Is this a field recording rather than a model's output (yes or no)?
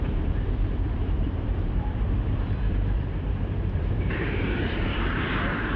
no